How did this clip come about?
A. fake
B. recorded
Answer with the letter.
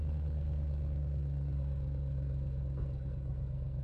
A